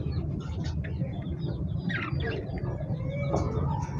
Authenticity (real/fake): real